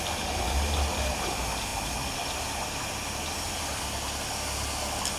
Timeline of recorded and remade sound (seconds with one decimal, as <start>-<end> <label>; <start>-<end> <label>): 0.0-5.2 recorded